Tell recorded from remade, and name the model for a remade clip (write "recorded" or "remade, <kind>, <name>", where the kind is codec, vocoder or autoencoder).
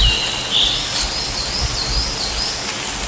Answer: recorded